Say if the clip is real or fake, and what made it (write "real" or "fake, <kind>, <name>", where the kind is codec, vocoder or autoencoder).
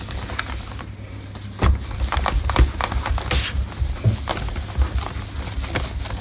real